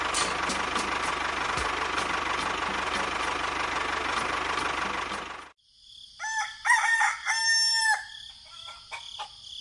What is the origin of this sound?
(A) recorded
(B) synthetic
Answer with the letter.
A